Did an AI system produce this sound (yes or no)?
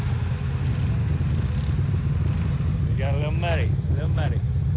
no